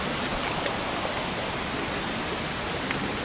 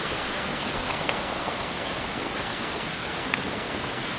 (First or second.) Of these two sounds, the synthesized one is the second